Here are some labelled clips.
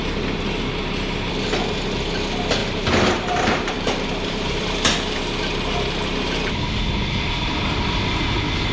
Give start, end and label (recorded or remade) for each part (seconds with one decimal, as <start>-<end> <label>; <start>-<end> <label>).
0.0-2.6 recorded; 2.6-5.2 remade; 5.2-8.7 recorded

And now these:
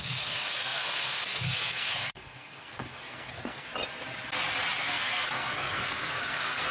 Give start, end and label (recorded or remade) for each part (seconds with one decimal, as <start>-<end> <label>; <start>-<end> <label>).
0.0-3.7 remade; 3.7-4.8 recorded; 4.8-6.7 remade

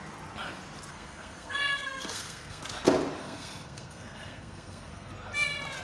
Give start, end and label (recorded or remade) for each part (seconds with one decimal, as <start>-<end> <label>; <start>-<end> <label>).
0.0-0.9 recorded; 0.9-2.6 remade; 2.6-3.2 recorded; 3.2-5.1 remade; 5.1-5.8 recorded